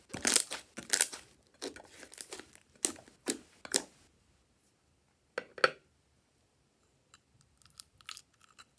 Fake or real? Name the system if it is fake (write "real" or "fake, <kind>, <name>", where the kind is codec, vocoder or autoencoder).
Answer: real